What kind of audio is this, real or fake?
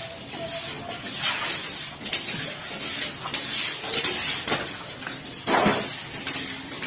real